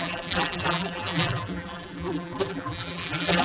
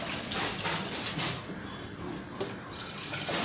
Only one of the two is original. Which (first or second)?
second